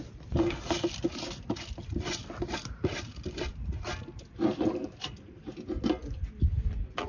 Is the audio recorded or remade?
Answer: recorded